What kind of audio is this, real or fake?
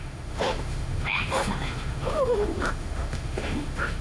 fake